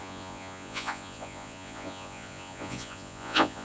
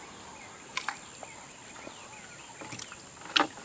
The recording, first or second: second